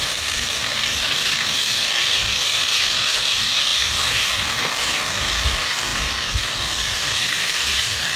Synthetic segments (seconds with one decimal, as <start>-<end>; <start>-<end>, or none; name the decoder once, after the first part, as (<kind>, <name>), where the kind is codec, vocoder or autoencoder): 0.0-8.2 (codec, DAC)

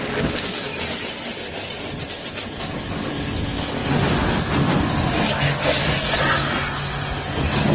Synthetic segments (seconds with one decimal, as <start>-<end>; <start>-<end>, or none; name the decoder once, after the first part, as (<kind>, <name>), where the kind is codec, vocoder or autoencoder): 0.0-0.7 (codec, DAC); 2.1-3.8

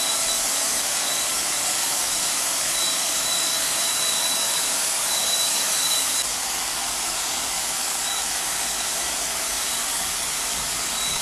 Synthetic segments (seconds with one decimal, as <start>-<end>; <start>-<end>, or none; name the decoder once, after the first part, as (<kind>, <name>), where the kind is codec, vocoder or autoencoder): 0.0-11.2 (codec, DAC)

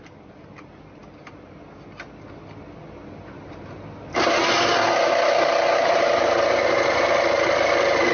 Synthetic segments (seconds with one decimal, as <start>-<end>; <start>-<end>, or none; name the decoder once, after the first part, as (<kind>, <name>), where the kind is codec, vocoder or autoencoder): none

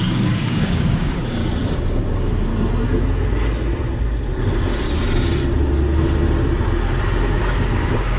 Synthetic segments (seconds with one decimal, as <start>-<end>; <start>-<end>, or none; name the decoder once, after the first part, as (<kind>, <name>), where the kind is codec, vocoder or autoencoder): 0.0-1.4 (codec, DAC); 2.0-2.5; 7.4-8.2